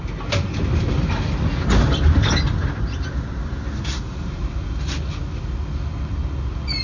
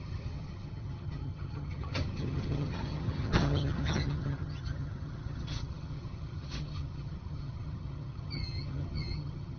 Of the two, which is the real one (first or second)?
first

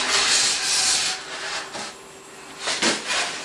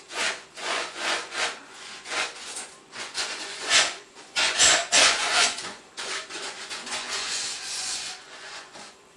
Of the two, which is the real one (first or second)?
first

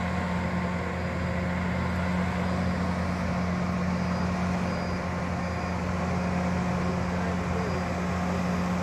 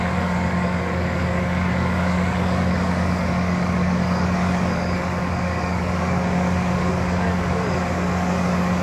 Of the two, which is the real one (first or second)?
first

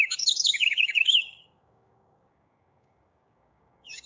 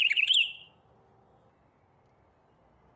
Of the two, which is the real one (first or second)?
second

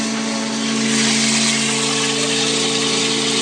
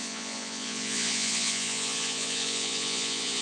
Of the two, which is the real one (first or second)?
first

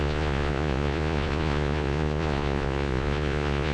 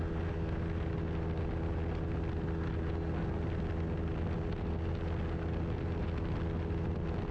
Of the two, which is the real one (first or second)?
second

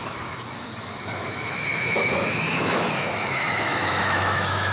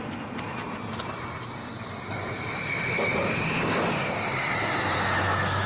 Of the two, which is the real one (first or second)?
second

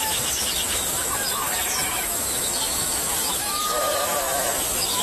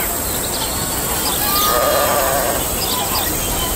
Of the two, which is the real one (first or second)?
second